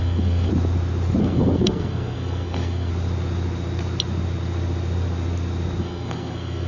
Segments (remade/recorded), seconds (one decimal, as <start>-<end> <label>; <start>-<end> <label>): 0.0-0.5 remade; 0.5-1.2 recorded; 1.2-2.9 remade; 2.9-5.8 recorded; 5.8-6.7 remade